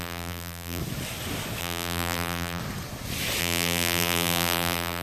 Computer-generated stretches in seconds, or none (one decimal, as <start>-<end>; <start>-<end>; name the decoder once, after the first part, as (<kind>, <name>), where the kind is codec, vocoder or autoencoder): 0.0-0.8 (vocoder, BigVGAN v2); 1.6-2.6; 3.4-5.0